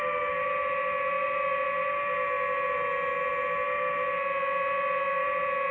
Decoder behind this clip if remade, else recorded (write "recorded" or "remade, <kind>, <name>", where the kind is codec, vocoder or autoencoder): recorded